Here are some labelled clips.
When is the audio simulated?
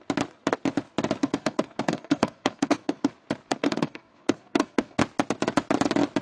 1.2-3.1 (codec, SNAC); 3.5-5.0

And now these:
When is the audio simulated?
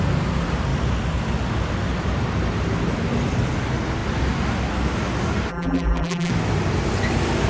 5.5-6.3 (vocoder, BigVGAN v2)